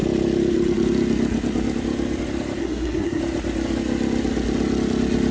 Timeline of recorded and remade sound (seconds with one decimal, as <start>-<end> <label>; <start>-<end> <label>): 0.0-2.6 recorded; 2.6-3.2 remade; 3.2-5.3 recorded